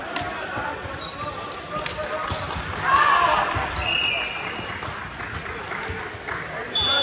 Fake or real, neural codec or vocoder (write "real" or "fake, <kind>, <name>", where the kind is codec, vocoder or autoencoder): real